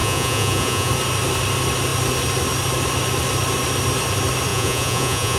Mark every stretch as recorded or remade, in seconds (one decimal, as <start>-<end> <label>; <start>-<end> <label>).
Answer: 0.0-0.9 remade; 0.9-4.5 recorded; 4.5-5.4 remade